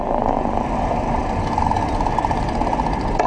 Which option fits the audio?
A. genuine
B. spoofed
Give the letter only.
A